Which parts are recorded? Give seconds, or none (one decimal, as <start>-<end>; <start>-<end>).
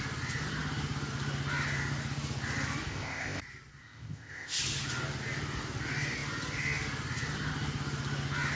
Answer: 0.0-2.9; 3.4-3.8; 4.6-8.6